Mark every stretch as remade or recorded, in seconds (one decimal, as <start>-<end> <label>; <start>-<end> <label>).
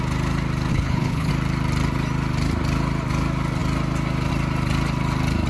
0.0-0.7 recorded; 0.7-1.3 remade; 1.3-5.5 recorded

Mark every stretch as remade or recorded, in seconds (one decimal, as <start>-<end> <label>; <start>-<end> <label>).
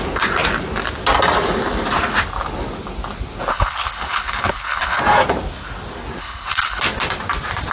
0.0-3.5 recorded; 3.5-5.0 remade; 5.0-6.2 recorded; 6.2-6.8 remade; 6.8-7.7 recorded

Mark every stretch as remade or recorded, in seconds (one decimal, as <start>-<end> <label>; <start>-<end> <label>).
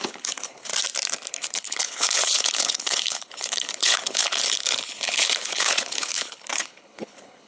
0.0-0.7 remade; 0.7-1.3 recorded; 1.3-7.5 remade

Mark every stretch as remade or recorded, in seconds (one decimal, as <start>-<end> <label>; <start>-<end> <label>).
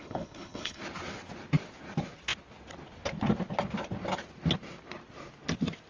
0.0-0.8 remade; 0.8-5.9 recorded